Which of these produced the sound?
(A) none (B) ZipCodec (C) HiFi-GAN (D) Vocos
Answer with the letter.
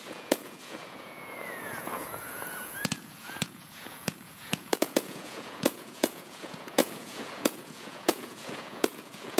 D